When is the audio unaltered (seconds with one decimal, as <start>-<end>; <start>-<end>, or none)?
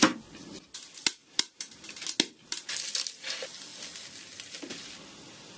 0.0-1.2; 1.7-5.6